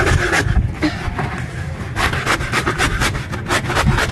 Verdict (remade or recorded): recorded